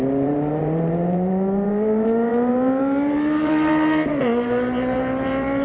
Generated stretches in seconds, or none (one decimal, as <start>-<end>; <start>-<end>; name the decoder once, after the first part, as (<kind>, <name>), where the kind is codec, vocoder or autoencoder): 0.0-5.6 (vocoder, BigVGAN v2)